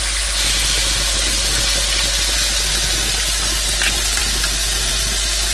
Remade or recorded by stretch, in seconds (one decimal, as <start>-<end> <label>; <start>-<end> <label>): 0.0-5.5 recorded